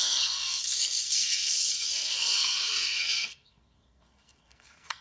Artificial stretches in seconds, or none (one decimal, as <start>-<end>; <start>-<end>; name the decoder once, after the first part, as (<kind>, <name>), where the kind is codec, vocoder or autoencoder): 0.0-5.0 (codec, SNAC)